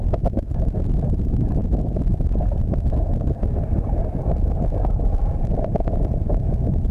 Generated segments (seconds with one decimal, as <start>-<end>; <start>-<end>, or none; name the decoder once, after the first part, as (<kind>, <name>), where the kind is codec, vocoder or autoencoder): none